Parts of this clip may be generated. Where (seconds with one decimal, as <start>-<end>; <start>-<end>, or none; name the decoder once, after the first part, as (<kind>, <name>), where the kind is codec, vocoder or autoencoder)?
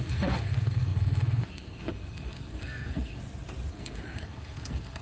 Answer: 0.0-3.2 (codec, SNAC); 3.7-5.0